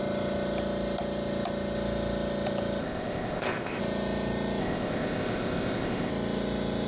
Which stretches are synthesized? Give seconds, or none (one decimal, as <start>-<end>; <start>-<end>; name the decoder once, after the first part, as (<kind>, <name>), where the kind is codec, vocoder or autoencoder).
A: 2.8-3.8 (codec, ZipCodec); 4.6-6.1